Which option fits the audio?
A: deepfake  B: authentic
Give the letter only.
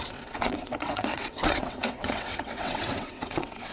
A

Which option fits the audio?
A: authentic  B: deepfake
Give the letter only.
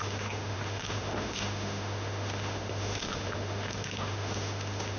B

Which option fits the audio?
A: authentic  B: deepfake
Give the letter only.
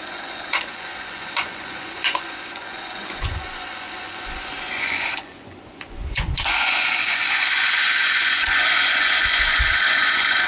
B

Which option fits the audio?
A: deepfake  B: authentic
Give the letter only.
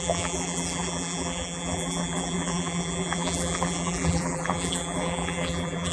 A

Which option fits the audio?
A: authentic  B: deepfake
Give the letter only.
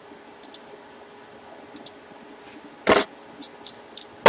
A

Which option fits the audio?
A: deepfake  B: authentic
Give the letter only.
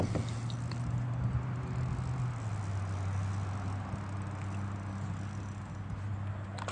B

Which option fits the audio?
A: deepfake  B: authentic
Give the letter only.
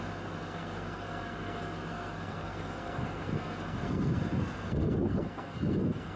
A